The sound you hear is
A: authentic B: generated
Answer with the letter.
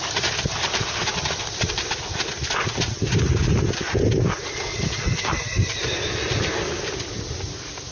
A